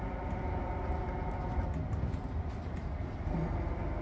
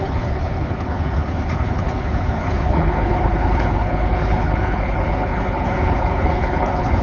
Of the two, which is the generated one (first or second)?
second